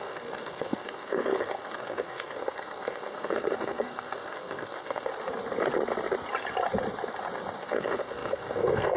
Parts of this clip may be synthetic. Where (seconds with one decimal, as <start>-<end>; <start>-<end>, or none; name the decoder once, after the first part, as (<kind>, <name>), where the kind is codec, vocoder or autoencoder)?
0.0-5.1 (codec, SNAC); 7.6-9.0